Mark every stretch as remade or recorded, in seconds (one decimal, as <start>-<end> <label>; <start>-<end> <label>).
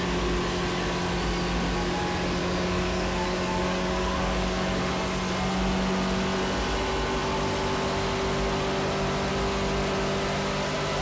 0.0-2.4 recorded; 2.4-4.9 remade; 4.9-11.0 recorded